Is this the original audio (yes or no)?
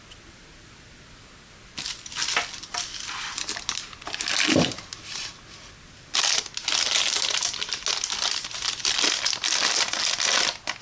yes